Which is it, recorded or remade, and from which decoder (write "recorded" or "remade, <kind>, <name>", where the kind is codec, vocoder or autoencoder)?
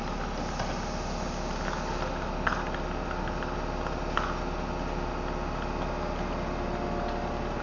recorded